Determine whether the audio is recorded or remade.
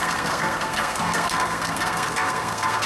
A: remade